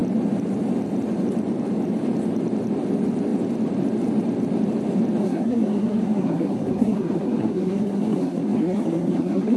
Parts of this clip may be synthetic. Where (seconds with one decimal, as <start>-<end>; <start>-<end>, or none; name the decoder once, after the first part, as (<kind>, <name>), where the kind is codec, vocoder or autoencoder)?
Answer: 5.2-9.6 (codec, SNAC)